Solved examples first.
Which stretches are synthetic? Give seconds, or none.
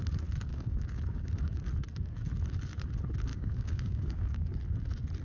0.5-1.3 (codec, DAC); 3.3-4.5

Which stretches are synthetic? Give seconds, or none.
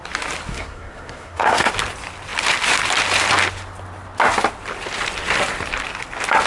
0.5-1.7 (codec, SNAC)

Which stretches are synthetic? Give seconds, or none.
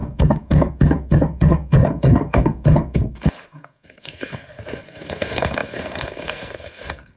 0.0-7.2 (codec, SNAC)